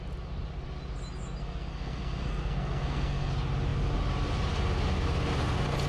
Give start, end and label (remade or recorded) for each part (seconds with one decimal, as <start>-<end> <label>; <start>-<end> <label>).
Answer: 0.0-1.4 recorded; 1.4-3.3 remade; 3.3-5.9 recorded